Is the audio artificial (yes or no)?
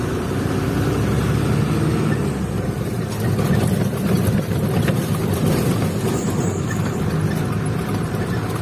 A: no